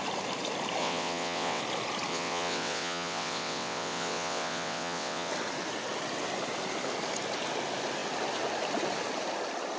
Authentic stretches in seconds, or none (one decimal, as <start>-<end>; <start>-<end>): 0.0-0.8; 1.6-2.1; 5.3-9.8